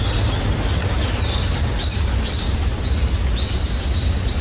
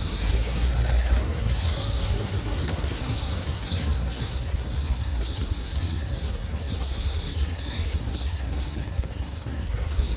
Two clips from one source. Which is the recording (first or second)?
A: first